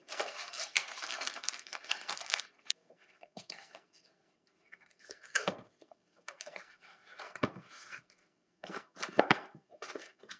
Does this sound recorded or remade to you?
remade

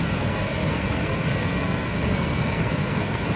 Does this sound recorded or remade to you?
remade